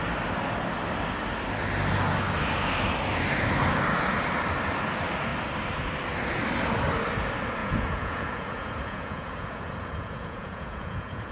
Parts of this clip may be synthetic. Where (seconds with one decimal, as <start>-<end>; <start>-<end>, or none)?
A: 7.6-11.3